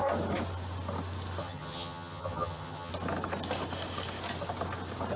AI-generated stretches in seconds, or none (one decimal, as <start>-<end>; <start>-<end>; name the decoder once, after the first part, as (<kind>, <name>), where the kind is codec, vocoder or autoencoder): 1.4-2.9 (vocoder, HiFi-GAN)